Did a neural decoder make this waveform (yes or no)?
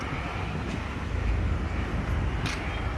no